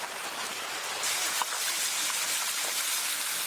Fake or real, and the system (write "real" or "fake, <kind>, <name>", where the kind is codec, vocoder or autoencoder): real